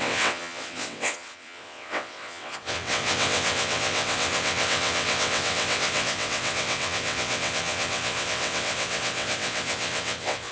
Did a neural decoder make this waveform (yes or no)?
yes